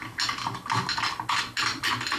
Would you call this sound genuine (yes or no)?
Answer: yes